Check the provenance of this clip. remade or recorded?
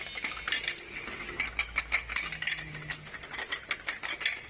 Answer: recorded